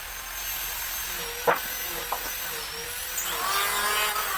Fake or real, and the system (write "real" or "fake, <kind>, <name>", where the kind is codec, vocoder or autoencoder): real